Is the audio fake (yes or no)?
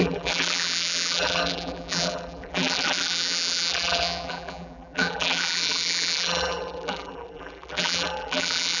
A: yes